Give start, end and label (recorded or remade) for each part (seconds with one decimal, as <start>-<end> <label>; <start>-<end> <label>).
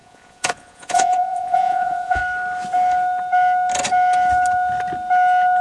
0.0-2.2 remade; 2.2-5.6 recorded